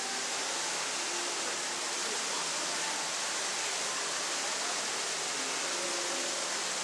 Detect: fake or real real